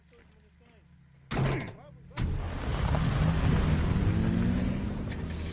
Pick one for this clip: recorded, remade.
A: recorded